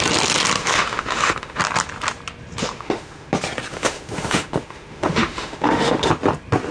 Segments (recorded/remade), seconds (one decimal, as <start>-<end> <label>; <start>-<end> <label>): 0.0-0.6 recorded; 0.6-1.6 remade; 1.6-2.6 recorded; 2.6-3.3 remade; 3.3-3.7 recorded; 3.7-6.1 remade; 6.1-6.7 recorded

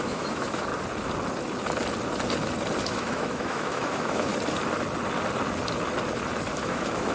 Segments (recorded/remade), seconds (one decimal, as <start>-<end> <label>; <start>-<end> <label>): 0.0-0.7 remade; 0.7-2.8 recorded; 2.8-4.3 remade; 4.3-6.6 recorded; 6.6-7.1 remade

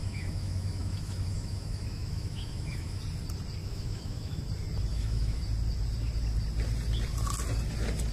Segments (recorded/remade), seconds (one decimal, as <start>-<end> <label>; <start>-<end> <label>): 0.0-3.0 remade; 3.0-3.6 recorded; 3.6-4.4 remade; 4.4-4.9 recorded; 4.9-5.4 remade; 5.4-8.1 recorded